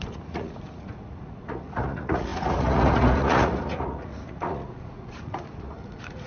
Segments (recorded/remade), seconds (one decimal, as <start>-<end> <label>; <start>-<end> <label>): 0.0-6.3 remade